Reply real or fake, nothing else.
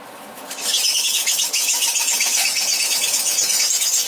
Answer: fake